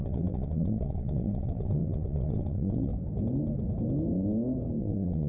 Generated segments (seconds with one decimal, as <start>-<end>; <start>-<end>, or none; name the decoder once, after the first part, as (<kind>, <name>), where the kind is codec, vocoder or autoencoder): 0.0-2.9 (vocoder, WaveNeXt); 4.8-5.3